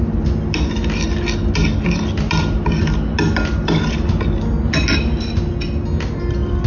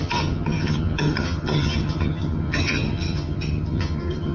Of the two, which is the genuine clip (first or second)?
first